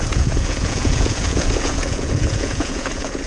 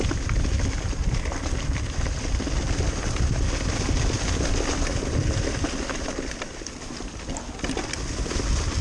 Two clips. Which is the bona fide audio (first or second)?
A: second